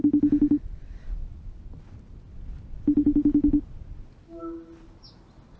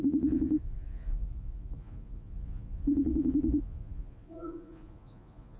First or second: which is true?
first